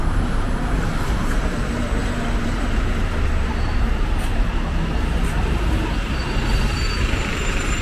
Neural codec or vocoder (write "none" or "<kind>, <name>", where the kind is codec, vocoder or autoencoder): vocoder, BigVGAN v2